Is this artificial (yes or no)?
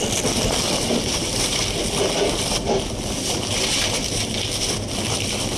yes